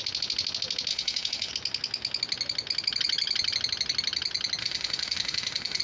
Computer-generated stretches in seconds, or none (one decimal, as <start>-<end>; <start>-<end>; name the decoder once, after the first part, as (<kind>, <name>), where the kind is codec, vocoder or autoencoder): 0.9-1.5 (autoencoder, DAC-VAE); 4.6-5.8